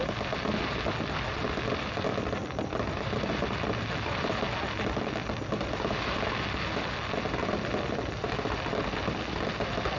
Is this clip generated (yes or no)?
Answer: no